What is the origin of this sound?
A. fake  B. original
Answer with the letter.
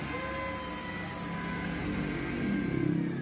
B